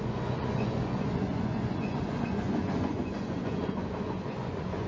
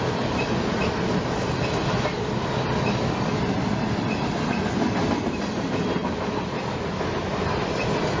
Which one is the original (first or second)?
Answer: second